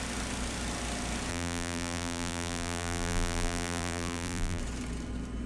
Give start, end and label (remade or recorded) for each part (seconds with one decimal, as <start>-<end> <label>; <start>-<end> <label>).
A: 0.0-1.3 recorded; 1.3-4.6 remade; 4.6-5.5 recorded